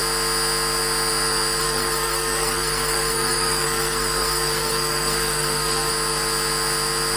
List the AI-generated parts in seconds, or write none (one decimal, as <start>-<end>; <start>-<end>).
1.6-5.9